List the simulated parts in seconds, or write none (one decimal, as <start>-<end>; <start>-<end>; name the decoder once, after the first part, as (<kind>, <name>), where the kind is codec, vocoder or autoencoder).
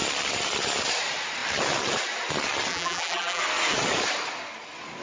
2.7-3.4 (vocoder, BigVGAN v2)